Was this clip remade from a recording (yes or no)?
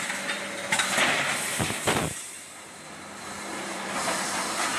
yes